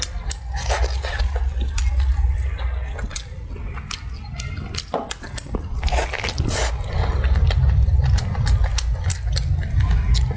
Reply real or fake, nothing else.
real